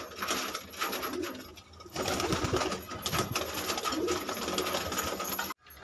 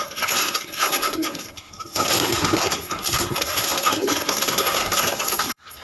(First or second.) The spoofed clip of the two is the second